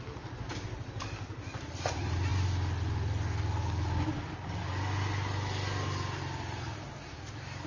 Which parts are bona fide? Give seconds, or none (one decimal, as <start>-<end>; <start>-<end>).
0.0-7.7